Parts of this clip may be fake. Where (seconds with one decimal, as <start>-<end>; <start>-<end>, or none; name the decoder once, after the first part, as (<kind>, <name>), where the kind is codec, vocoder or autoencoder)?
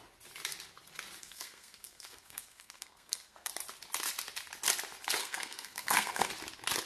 1.2-3.5 (codec, SNAC); 5.2-6.3